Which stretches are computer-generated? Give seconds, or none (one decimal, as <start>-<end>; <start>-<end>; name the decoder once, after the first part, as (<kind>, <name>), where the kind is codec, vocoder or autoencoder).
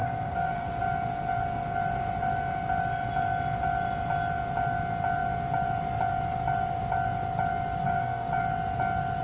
0.0-0.7 (codec, SNAC); 7.8-8.3